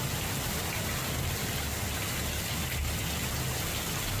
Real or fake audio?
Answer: real